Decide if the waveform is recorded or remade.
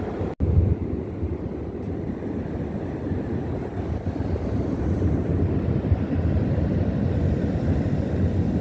remade